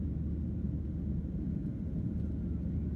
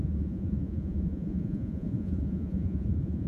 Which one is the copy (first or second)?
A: second